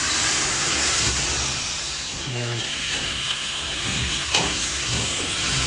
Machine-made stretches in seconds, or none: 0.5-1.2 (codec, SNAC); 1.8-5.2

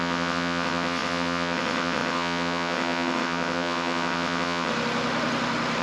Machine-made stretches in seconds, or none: 0.0-4.7 (vocoder, WaveNeXt)

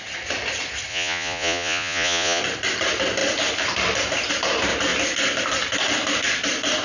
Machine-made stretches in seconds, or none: 0.9-2.4 (vocoder, Vocos)

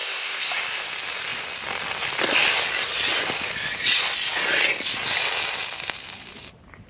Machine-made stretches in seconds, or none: 0.0-0.5 (codec, SNAC)

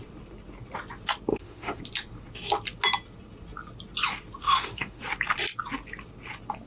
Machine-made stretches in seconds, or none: 1.3-1.8 (autoencoder, DAC-VAE); 4.4-5.0